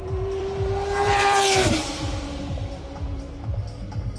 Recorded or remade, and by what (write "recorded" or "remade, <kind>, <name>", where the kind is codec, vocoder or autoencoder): remade, vocoder, BigVGAN v2